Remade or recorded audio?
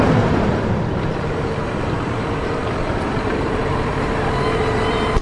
remade